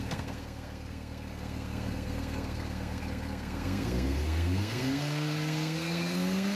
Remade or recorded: remade